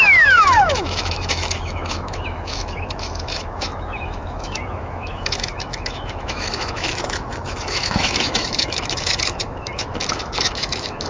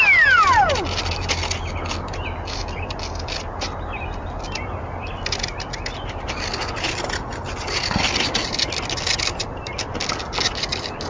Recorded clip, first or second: second